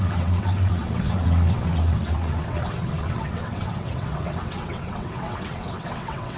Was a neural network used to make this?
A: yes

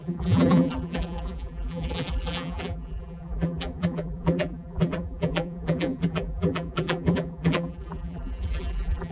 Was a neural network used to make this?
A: yes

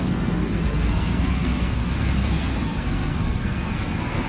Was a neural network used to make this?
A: yes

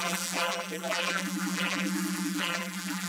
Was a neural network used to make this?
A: yes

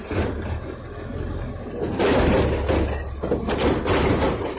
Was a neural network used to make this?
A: no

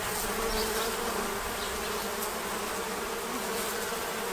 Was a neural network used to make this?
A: no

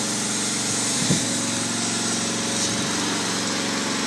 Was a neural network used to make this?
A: no